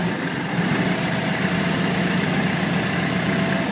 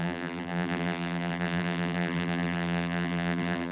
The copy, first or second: second